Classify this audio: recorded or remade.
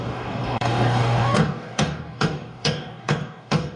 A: remade